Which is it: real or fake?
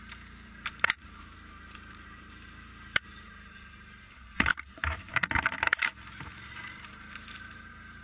fake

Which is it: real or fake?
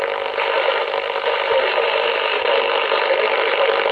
real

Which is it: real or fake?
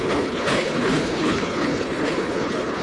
fake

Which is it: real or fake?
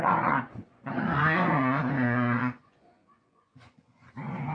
fake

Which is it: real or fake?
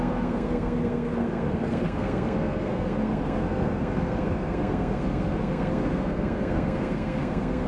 fake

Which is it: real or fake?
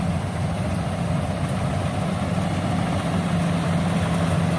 real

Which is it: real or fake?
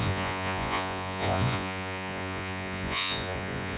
fake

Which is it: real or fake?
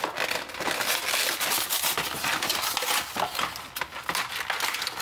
real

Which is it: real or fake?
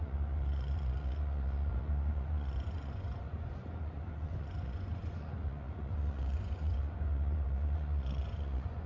fake